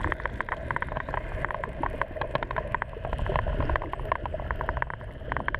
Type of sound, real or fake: real